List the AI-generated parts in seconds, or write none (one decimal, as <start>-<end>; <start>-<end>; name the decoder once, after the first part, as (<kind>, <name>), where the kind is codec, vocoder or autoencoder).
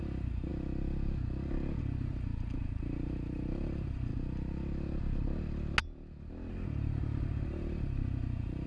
0.0-0.5 (vocoder, BigVGAN v2); 1.8-4.1; 6.5-8.7